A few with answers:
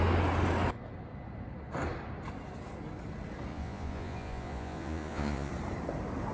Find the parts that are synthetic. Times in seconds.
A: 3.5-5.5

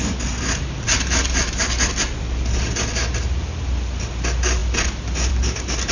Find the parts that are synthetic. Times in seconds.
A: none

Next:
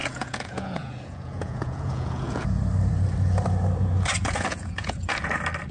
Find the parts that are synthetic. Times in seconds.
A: 0.0-2.6; 4.2-5.3

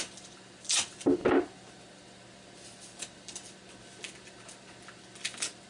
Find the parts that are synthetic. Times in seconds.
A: none

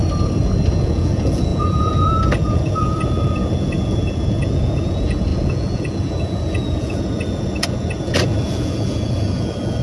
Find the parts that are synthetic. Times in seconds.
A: 0.8-9.8